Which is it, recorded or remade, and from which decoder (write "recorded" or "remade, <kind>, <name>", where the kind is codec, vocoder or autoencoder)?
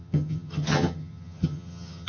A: remade, vocoder, HiFi-GAN